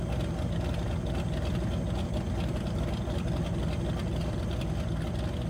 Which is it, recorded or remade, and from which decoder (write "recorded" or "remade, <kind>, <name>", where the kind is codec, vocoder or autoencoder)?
recorded